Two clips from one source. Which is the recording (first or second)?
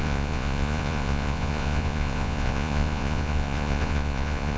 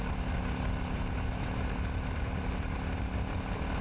second